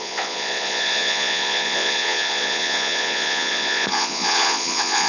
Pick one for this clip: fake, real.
fake